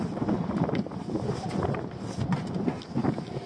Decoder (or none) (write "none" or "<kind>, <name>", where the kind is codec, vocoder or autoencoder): none